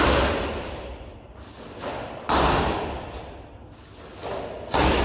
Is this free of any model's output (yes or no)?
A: yes